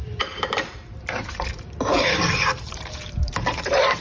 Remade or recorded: remade